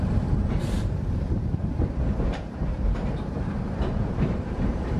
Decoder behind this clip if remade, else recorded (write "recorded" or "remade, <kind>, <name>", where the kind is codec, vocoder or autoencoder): remade, vocoder, BigVGAN v2